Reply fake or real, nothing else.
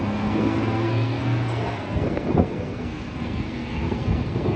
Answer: fake